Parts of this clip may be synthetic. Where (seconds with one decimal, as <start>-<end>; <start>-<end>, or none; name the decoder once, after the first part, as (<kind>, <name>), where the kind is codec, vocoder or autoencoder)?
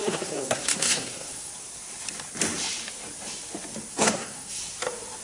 0.0-1.5 (codec, SNAC); 3.9-4.6